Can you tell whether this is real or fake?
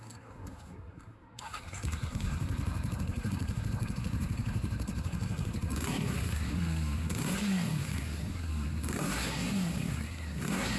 fake